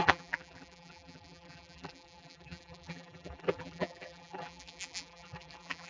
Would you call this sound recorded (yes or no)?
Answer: no